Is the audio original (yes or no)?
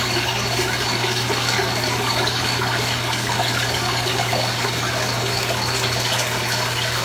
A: no